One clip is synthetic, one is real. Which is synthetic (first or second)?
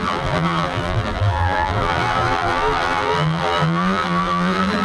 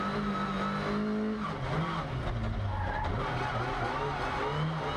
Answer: first